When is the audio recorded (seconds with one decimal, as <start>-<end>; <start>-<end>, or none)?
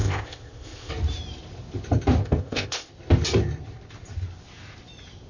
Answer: 0.9-2.2; 2.9-5.3